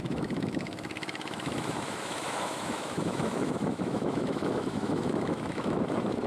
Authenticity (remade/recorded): remade